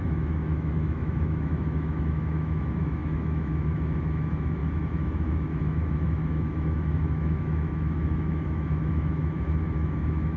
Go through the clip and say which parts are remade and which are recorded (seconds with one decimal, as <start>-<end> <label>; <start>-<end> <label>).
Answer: 0.0-10.4 remade